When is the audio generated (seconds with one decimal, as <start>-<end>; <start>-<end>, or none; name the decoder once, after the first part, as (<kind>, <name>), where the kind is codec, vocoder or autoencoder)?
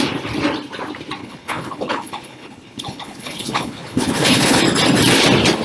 1.2-4.6 (codec, HILCodec)